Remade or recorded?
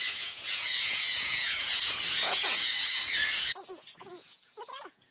remade